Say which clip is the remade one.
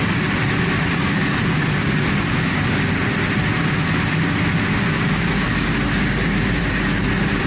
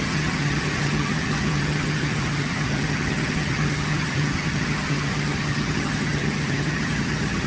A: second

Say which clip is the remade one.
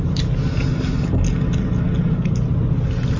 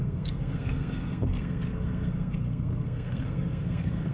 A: second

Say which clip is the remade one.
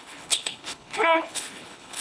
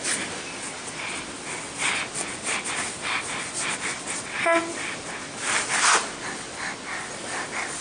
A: first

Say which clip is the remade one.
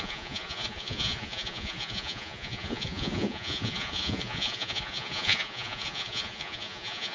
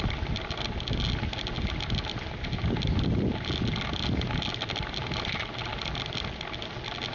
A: first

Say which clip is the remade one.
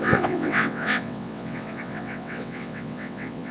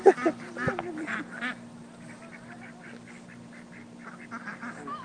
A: first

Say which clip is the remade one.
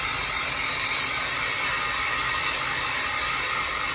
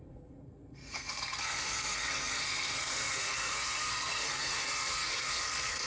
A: second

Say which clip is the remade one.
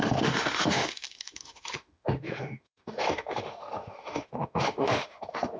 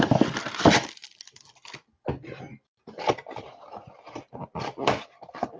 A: first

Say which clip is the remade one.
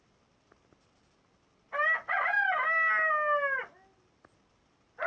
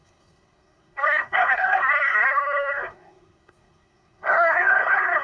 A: second